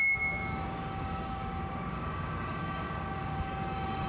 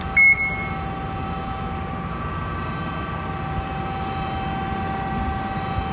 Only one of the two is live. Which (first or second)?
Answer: second